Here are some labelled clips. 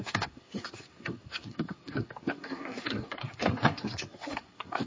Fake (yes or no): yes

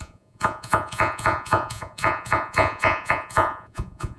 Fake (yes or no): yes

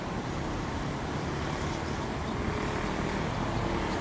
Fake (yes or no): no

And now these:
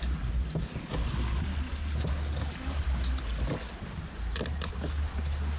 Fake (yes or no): no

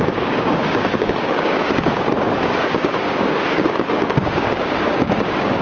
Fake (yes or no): yes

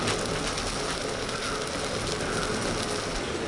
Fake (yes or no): no